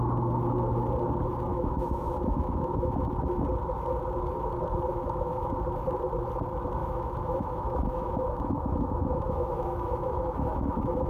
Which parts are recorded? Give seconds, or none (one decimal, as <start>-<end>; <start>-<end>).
0.0-1.5; 3.1-4.9; 5.5-6.8